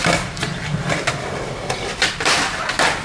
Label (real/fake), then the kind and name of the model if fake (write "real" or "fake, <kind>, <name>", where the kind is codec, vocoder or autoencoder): fake, vocoder, BigVGAN v2